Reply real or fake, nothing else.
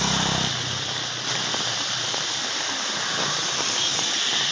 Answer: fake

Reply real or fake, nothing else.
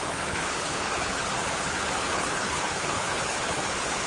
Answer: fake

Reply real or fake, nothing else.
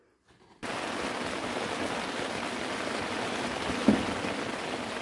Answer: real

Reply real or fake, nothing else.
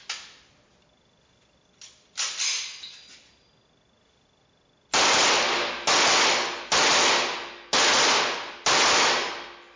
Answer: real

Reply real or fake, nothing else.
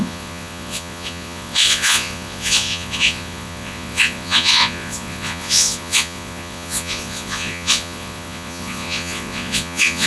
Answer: fake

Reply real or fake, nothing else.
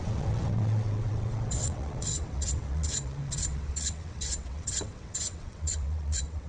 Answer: fake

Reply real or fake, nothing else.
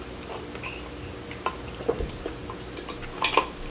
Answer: real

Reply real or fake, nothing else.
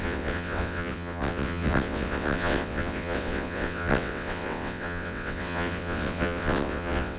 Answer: fake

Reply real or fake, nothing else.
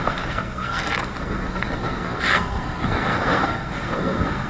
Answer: fake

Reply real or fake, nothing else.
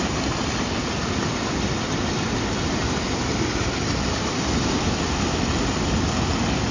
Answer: real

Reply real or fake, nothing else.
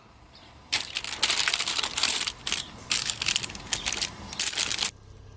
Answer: real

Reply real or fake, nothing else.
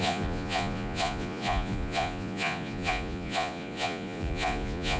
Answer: fake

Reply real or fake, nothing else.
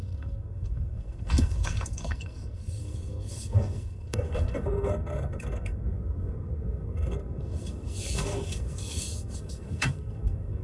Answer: fake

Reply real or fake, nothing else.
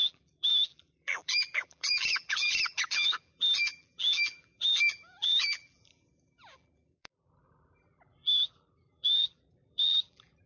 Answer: fake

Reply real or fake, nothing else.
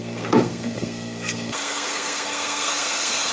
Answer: fake